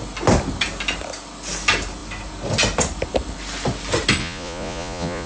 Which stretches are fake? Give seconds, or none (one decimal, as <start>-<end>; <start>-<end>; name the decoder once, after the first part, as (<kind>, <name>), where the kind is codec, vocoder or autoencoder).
4.2-5.3 (vocoder, Vocos)